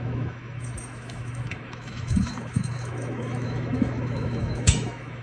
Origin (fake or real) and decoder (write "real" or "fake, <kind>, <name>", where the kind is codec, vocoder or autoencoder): fake, autoencoder, DAC-VAE